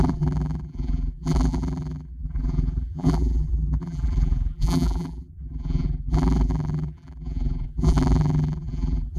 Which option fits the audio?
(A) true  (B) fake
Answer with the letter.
B